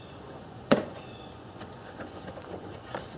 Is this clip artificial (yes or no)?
yes